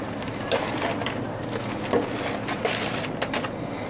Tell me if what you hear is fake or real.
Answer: real